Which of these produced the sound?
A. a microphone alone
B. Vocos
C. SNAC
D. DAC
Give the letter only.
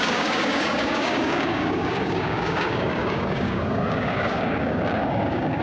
D